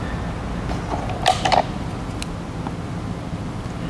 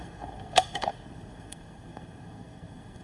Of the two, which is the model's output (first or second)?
second